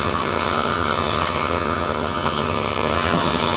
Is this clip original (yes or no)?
no